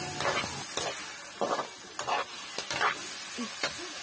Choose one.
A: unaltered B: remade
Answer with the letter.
A